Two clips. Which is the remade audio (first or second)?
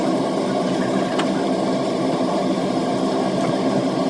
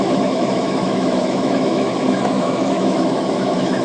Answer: second